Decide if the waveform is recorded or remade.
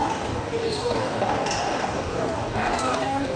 remade